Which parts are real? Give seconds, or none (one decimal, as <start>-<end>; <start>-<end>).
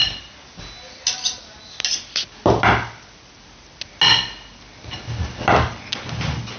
0.0-6.6